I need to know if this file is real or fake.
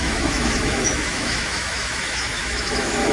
fake